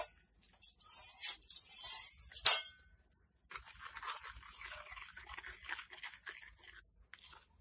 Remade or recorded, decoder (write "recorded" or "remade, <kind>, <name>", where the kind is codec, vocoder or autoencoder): recorded